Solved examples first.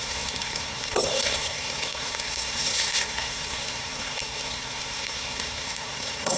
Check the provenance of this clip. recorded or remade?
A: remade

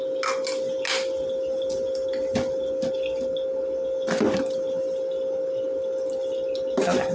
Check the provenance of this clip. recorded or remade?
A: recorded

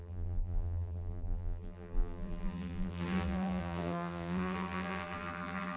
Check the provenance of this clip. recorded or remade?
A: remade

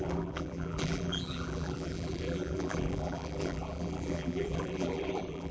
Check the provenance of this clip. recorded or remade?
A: remade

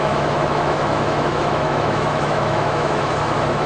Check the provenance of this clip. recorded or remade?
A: remade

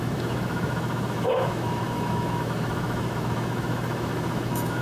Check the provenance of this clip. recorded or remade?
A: remade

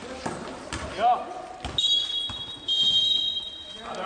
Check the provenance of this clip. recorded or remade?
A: recorded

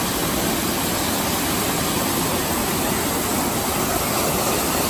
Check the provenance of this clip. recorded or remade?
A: recorded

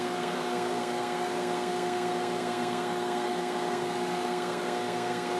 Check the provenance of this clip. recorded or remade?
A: remade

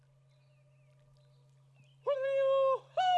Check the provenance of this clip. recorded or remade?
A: recorded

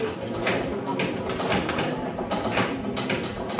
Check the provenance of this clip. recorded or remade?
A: recorded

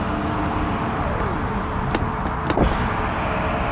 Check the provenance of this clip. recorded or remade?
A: recorded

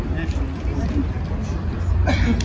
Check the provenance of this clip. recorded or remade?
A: recorded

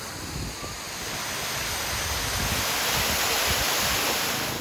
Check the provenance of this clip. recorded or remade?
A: recorded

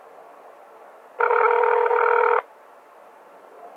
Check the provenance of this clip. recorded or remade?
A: recorded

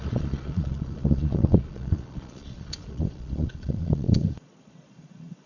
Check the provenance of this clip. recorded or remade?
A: remade